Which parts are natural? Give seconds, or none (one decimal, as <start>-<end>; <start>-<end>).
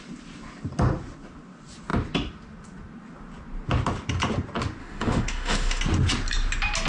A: 0.0-4.8; 5.8-6.9